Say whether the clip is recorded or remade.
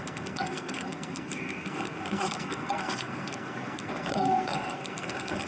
remade